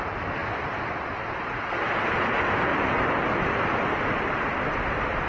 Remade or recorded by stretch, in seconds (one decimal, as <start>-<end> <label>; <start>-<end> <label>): 0.0-5.3 recorded